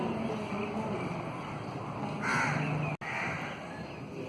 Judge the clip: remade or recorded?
recorded